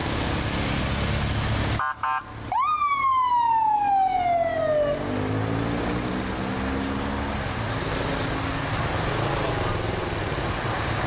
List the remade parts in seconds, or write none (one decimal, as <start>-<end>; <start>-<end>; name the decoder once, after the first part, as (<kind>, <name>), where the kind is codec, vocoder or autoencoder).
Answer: none